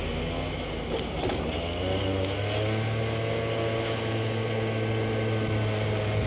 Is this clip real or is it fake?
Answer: real